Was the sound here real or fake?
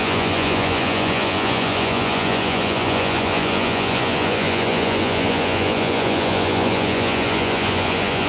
fake